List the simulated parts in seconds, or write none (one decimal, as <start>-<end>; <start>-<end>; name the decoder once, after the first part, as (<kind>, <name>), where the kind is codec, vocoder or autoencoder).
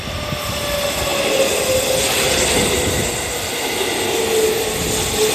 none